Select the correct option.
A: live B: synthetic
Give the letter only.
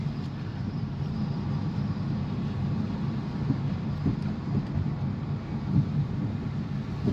A